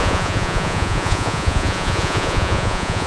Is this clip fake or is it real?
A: fake